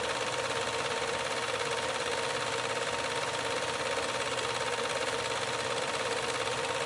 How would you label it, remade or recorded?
remade